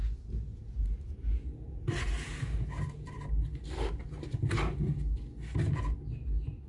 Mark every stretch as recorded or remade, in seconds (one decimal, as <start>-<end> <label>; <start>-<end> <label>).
0.0-0.5 recorded; 0.5-4.5 remade; 4.5-6.7 recorded

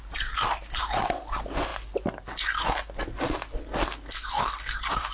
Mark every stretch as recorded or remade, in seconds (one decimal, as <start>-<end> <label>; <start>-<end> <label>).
0.0-5.1 recorded

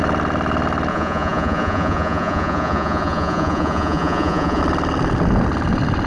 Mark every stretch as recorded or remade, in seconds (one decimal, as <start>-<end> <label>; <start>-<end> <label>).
0.0-0.9 recorded; 0.9-4.6 remade; 4.6-6.1 recorded

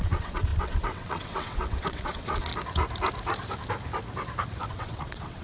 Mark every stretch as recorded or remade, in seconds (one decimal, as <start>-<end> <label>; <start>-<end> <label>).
0.0-2.5 remade; 2.5-4.7 recorded; 4.7-5.4 remade

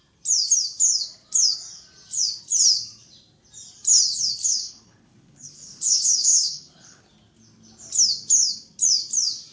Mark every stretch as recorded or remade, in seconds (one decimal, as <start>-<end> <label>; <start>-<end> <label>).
0.0-4.4 recorded; 4.4-7.0 remade; 7.0-9.5 recorded

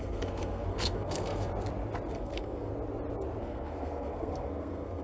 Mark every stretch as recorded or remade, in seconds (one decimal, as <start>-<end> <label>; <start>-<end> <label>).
0.0-1.5 remade; 1.5-2.1 recorded; 2.1-2.7 remade; 2.7-3.4 recorded; 3.4-5.0 remade

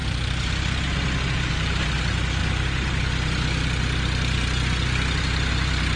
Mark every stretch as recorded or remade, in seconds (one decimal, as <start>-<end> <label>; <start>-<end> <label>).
0.0-1.5 recorded; 1.5-2.4 remade; 2.4-5.5 recorded; 5.5-6.0 remade

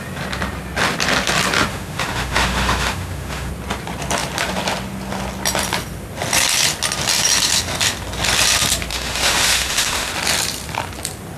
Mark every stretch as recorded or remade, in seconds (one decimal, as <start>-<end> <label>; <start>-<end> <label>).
0.0-1.7 recorded; 1.7-3.5 remade; 3.5-8.9 recorded; 8.9-10.1 remade; 10.1-11.4 recorded